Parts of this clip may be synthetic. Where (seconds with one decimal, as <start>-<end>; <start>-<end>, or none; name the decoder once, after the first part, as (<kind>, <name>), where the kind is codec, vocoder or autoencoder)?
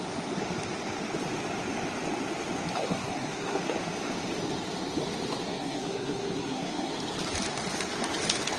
2.8-3.6 (codec, SNAC); 5.5-6.9